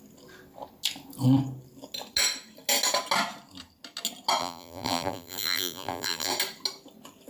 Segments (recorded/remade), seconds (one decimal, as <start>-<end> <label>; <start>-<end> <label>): 0.0-4.4 recorded; 4.4-6.3 remade; 6.3-7.3 recorded